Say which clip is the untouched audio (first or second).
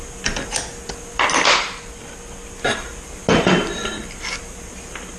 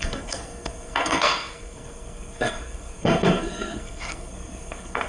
first